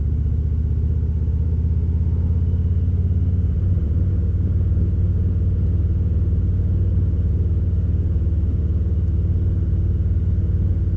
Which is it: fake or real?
real